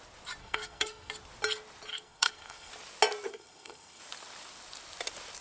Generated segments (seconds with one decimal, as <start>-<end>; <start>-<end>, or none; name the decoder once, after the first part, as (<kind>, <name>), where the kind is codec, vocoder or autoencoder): 0.4-1.1 (codec, SNAC); 1.9-2.7; 3.3-4.0